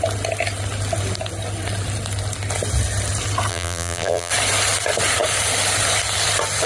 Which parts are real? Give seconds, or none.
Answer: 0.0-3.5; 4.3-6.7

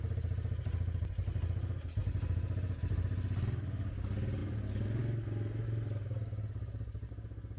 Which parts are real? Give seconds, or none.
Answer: 0.0-7.6

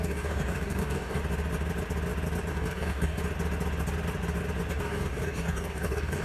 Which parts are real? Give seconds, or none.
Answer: 1.2-2.5; 3.2-4.7

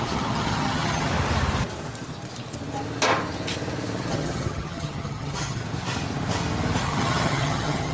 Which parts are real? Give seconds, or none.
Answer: 1.1-4.1; 5.6-6.8

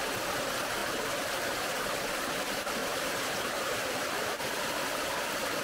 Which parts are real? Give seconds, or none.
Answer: 0.0-2.8; 4.3-5.6

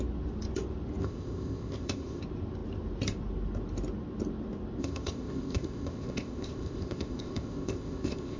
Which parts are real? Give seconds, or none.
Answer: 0.0-1.0; 2.2-4.8

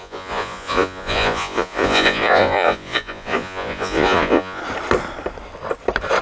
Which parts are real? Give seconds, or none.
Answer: 4.6-6.2

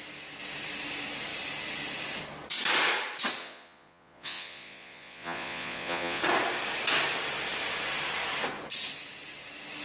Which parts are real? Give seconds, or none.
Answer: 0.0-3.4; 6.2-9.8